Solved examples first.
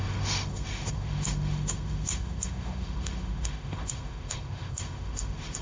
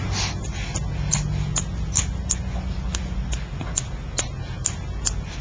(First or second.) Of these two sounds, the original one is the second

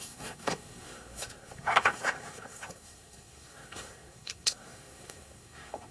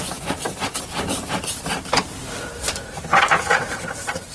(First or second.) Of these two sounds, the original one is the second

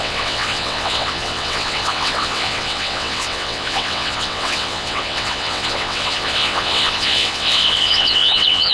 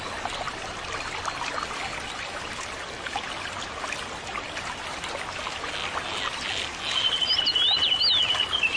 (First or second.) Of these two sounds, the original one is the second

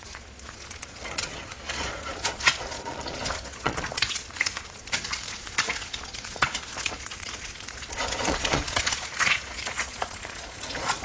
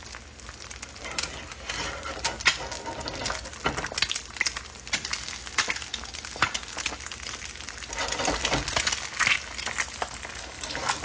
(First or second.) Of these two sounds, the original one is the second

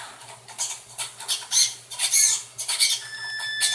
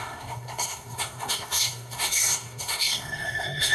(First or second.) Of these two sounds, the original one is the first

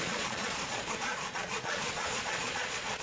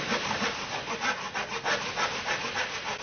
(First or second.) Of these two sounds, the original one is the second